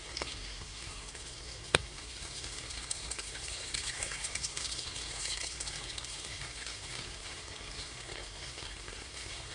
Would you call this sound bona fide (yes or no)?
no